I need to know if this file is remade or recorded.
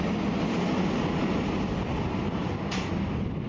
recorded